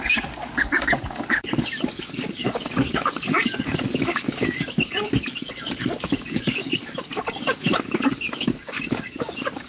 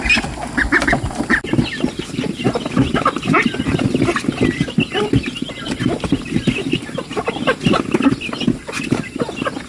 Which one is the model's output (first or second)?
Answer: first